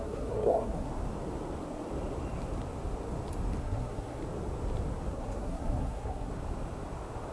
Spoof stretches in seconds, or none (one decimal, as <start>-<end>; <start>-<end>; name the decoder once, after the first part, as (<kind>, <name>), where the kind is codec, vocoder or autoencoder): 0.0-0.9 (codec, SNAC); 3.6-4.2; 5.1-6.3